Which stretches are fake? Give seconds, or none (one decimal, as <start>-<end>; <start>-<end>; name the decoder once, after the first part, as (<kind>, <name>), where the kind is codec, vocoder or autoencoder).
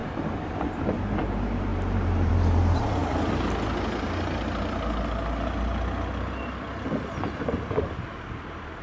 1.2-3.0 (vocoder, BigVGAN v2); 8.1-8.8